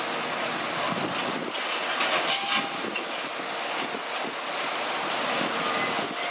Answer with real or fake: real